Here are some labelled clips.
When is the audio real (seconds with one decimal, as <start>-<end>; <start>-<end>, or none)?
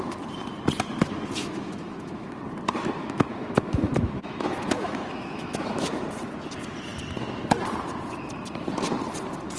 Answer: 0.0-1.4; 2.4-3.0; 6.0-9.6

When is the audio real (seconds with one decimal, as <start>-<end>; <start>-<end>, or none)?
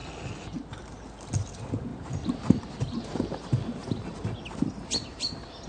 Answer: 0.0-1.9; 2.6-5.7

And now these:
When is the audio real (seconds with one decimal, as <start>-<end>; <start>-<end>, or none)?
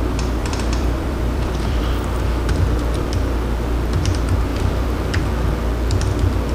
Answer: 0.0-0.4; 1.8-4.5; 5.2-6.5